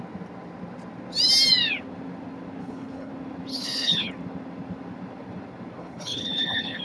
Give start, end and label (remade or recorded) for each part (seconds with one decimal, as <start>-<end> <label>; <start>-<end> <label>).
0.0-2.6 recorded; 2.6-3.1 remade; 3.1-3.5 recorded; 3.5-4.1 remade; 4.1-5.8 recorded; 5.8-6.8 remade